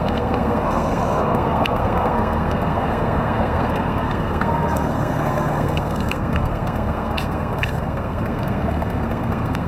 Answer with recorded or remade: remade